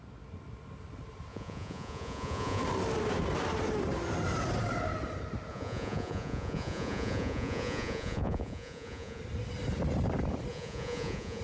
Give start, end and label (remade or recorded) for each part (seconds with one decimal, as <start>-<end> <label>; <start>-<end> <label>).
0.0-1.3 recorded; 1.3-2.6 remade; 2.6-5.5 recorded; 5.5-9.2 remade; 9.2-10.5 recorded; 10.5-11.4 remade